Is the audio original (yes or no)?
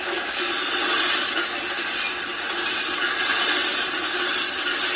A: yes